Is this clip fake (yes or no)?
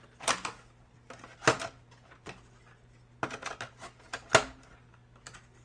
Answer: no